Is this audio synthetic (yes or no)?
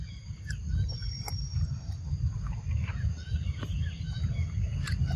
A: no